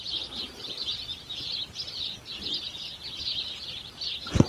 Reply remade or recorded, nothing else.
recorded